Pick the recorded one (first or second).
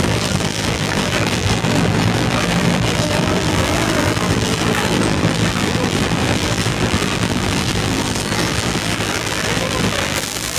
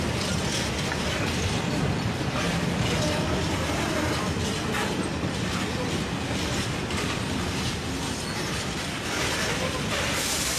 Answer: second